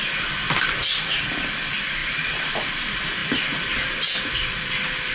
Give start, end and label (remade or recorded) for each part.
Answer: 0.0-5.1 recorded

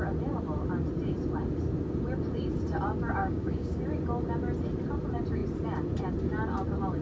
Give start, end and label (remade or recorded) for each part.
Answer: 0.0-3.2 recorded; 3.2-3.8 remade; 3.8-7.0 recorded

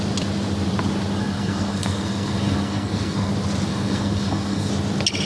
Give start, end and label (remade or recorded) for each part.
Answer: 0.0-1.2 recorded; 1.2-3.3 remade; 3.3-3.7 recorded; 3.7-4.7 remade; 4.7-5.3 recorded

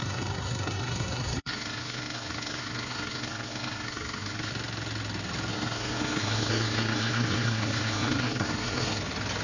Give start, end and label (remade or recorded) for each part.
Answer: 0.0-4.5 remade; 4.5-5.5 recorded; 5.5-9.0 remade; 9.0-9.4 recorded

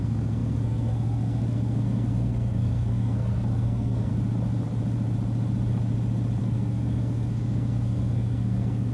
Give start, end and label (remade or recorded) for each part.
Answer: 0.0-4.1 remade; 4.1-6.4 recorded; 6.4-8.9 remade

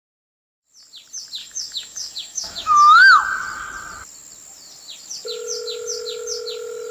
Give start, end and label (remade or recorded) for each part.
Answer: 0.0-1.4 recorded; 1.4-3.2 remade; 3.2-6.9 recorded